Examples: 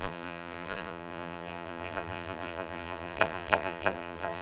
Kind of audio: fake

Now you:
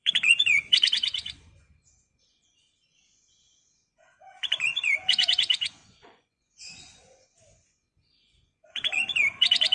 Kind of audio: fake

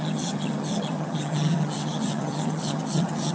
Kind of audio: fake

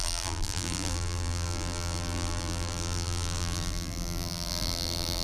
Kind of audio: fake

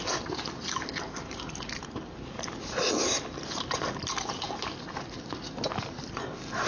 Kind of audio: real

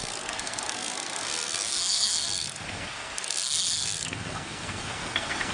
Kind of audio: fake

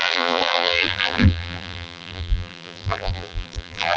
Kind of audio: fake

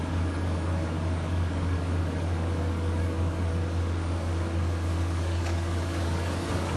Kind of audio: fake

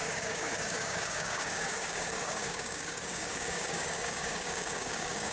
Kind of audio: fake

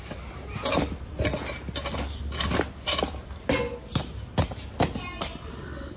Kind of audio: real